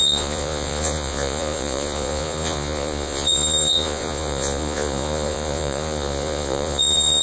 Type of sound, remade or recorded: remade